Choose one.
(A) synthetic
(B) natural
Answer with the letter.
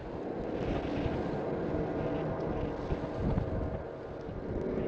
B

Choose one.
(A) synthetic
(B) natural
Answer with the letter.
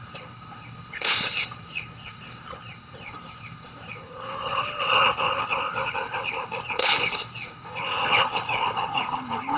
A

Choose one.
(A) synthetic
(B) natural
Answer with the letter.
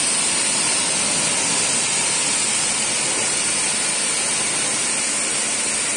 B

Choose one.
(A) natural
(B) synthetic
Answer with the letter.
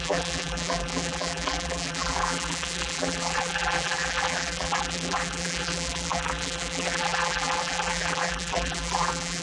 B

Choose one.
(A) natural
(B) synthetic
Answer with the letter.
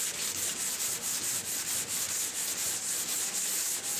A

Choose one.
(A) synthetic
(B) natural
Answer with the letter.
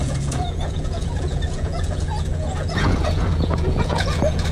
A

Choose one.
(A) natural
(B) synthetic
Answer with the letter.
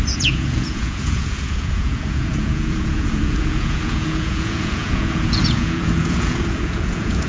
B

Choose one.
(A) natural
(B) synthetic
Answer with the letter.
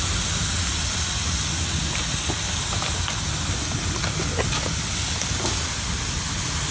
A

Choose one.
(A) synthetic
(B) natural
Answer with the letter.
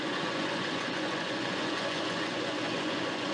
A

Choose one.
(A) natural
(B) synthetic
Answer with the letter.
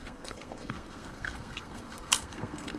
B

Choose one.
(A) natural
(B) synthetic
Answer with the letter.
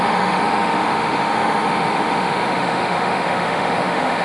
B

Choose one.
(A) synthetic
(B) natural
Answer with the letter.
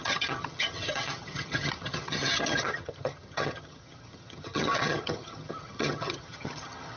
A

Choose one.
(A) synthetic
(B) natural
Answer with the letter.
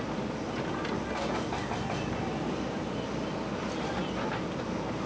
B